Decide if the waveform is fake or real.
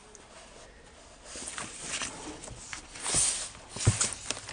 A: real